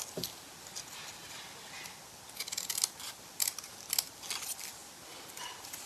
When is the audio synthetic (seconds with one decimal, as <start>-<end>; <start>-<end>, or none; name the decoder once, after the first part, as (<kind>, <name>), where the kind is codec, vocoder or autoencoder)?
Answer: none